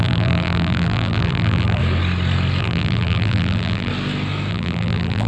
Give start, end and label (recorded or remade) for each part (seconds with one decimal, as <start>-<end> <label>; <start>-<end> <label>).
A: 0.0-1.8 remade; 1.8-2.6 recorded; 2.6-3.9 remade; 3.9-4.5 recorded; 4.5-5.3 remade